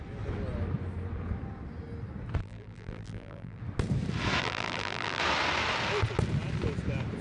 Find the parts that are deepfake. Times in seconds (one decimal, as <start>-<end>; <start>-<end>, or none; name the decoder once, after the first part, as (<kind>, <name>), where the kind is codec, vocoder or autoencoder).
2.4-3.6 (vocoder, BigVGAN v2); 4.4-5.2